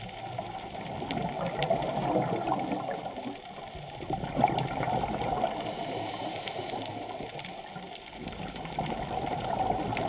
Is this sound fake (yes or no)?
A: no